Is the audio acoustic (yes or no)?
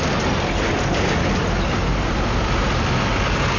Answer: yes